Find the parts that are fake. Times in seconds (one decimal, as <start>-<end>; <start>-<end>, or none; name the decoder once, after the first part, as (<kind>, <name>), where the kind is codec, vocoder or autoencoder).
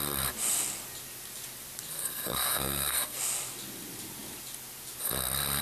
2.0-3.2 (codec, SNAC)